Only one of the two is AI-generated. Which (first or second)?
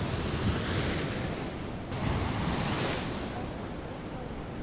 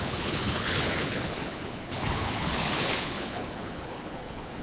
second